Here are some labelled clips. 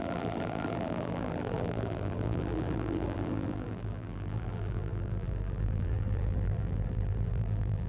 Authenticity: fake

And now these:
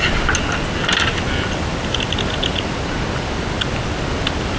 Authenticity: real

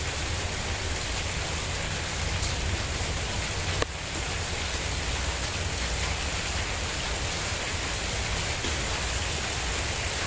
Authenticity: real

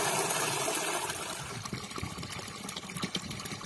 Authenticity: real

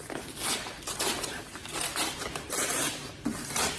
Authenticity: fake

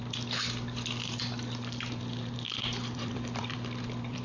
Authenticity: fake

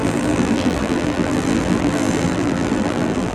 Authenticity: fake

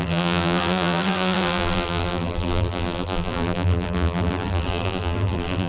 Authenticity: fake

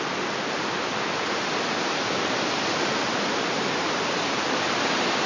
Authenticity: real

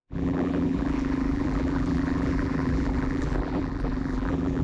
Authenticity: fake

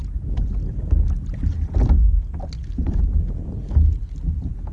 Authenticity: real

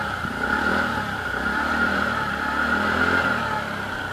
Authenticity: fake